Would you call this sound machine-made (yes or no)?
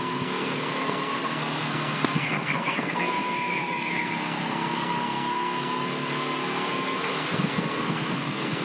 yes